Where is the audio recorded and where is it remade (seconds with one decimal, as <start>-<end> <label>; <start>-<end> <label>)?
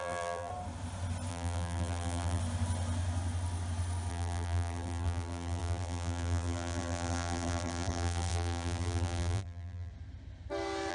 0.0-0.5 remade; 0.5-1.3 recorded; 1.3-2.4 remade; 2.4-4.1 recorded; 4.1-9.9 remade; 9.9-10.9 recorded